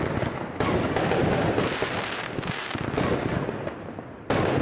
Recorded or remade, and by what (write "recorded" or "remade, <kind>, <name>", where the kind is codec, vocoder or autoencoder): recorded